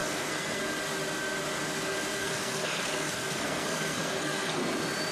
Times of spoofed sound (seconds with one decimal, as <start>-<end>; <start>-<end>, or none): 0.0-0.6; 2.2-4.6